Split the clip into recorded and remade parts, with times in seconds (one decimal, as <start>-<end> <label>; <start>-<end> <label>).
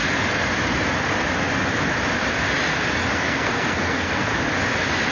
0.0-3.1 recorded; 3.1-4.3 remade; 4.3-5.1 recorded